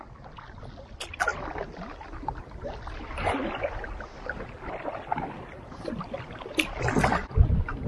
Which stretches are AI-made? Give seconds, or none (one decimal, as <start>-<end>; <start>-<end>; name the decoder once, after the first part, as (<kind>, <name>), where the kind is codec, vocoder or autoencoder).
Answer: none